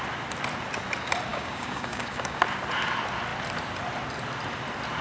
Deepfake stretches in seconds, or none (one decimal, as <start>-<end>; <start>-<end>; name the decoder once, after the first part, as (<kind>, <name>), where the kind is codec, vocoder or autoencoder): 1.3-2.4 (codec, DAC)